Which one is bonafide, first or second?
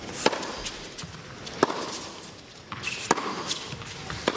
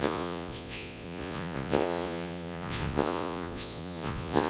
first